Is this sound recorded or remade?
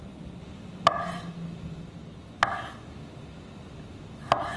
recorded